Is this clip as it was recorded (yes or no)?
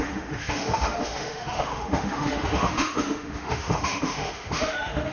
no